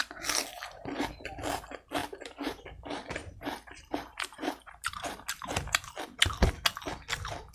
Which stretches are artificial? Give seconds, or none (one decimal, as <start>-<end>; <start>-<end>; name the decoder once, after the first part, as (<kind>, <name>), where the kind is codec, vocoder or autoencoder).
0.5-1.1 (vocoder, BigVGAN v2); 2.0-2.6; 3.2-5.9